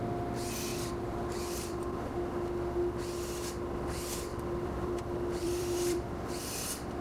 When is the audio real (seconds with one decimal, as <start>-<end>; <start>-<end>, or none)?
0.0-0.7; 2.1-4.3; 6.6-7.0